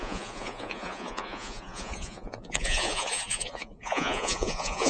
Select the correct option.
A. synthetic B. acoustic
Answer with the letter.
A